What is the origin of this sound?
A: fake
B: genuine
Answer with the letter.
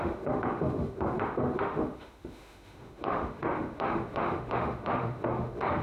A